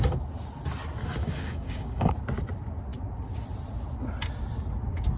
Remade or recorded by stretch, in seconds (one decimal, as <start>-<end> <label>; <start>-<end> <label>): 0.0-1.0 recorded; 1.0-2.1 remade; 2.1-5.2 recorded